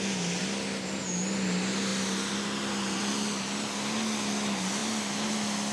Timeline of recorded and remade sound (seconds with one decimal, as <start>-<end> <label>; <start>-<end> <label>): 0.0-5.7 recorded